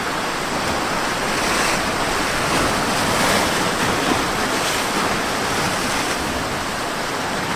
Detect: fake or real real